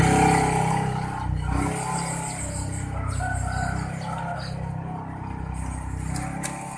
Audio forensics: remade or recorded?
recorded